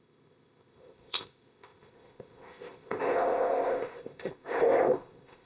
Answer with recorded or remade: remade